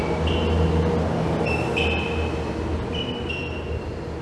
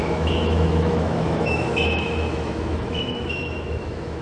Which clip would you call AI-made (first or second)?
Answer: second